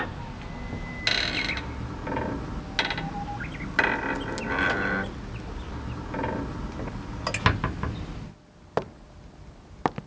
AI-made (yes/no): no